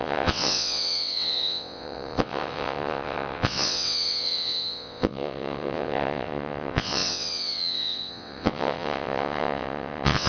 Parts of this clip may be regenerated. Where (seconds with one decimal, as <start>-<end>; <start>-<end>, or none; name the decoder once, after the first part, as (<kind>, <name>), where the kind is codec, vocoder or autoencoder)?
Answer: 0.0-10.3 (vocoder, WaveNeXt)